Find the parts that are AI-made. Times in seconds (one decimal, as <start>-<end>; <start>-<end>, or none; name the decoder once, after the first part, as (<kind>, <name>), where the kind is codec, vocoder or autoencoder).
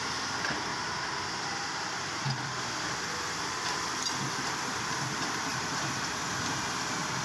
0.7-5.0 (vocoder, BigVGAN v2); 5.5-6.3